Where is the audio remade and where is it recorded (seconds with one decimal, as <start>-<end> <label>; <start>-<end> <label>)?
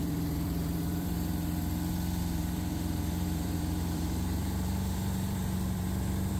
0.0-1.6 remade; 1.6-2.2 recorded; 2.2-6.4 remade